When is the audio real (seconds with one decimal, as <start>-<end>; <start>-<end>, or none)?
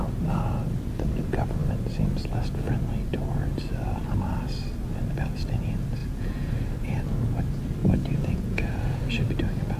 0.0-6.0; 6.5-7.8; 9.0-9.8